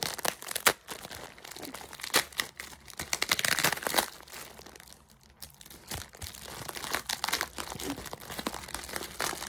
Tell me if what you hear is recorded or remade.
recorded